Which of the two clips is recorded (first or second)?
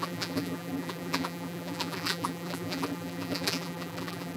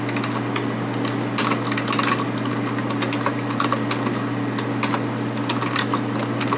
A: second